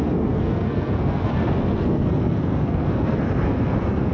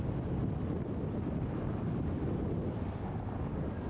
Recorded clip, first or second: second